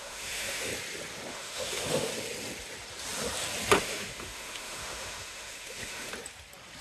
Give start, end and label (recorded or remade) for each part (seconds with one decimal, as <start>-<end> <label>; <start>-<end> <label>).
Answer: 0.0-0.7 remade; 0.7-1.3 recorded; 1.3-2.1 remade; 2.1-3.8 recorded; 3.8-6.1 remade; 6.1-6.8 recorded